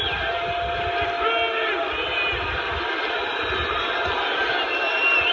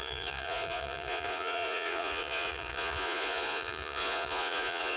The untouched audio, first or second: first